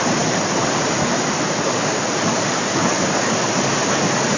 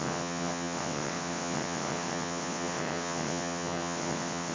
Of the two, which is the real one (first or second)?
first